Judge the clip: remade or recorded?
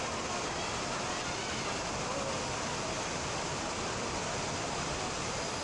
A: recorded